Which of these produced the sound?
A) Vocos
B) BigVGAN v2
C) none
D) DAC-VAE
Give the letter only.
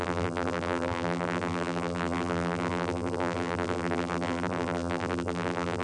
B